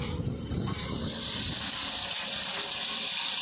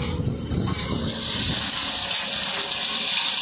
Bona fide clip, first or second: second